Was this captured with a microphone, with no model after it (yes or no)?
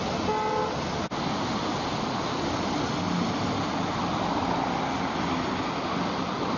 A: yes